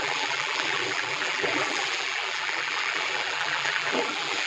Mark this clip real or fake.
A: fake